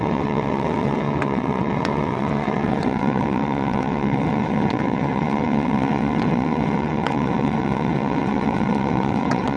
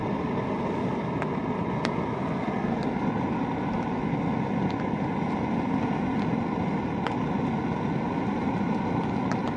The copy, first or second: first